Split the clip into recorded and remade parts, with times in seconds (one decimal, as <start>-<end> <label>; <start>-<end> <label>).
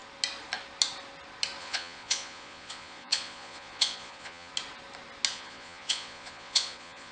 0.0-1.6 recorded; 1.6-4.5 remade; 4.5-5.3 recorded; 5.3-7.1 remade